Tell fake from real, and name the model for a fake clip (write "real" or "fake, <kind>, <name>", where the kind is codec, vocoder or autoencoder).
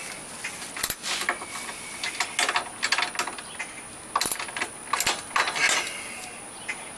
real